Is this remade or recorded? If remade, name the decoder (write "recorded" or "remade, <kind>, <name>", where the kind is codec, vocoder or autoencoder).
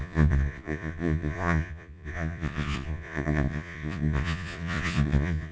remade, vocoder, Vocos